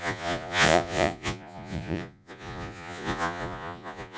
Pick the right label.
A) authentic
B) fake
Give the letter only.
B